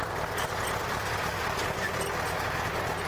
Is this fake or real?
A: real